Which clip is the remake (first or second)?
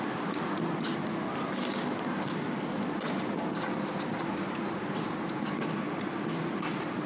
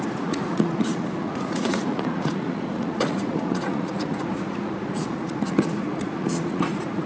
second